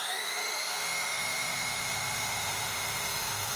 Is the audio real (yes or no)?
no